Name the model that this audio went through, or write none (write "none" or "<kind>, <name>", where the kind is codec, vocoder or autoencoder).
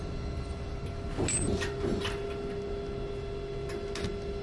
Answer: none